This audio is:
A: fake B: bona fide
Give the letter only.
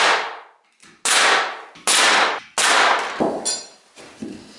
B